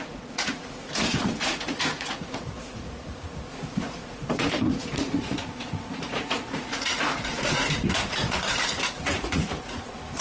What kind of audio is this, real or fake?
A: fake